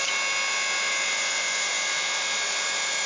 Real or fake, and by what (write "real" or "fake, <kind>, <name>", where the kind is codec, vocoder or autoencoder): real